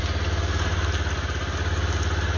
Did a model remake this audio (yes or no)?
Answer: no